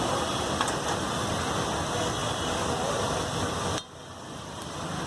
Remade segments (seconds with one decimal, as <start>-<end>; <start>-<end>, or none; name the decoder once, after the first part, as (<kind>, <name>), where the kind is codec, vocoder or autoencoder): 2.2-2.9 (vocoder, BigVGAN v2)